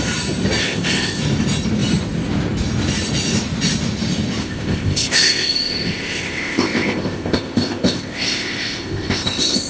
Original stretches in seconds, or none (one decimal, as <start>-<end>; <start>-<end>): 0.0-0.6; 1.2-4.4